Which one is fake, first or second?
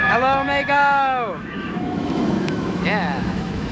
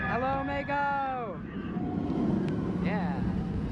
first